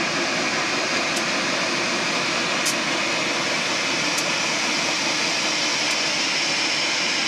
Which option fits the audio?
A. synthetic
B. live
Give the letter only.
B